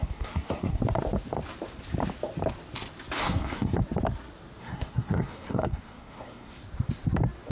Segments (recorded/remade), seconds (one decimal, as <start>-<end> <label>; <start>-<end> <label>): 0.0-0.8 remade; 0.8-3.2 recorded; 3.2-3.8 remade; 3.8-4.6 recorded; 4.6-6.6 remade; 6.6-7.5 recorded